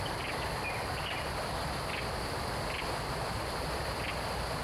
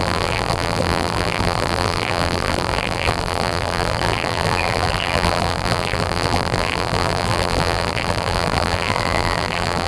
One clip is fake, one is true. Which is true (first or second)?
first